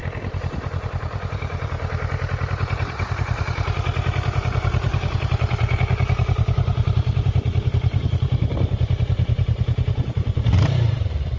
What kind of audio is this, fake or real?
fake